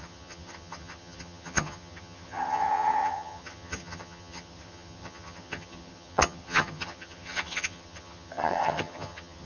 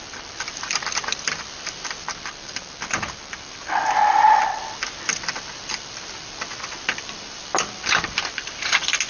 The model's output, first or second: first